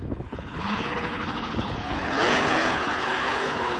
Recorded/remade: remade